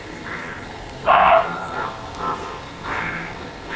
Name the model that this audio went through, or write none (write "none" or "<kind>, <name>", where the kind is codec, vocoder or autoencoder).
codec, SNAC